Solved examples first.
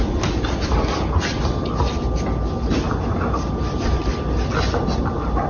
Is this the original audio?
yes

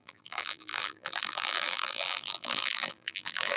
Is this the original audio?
no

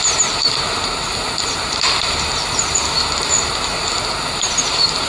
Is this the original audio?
yes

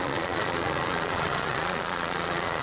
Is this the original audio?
no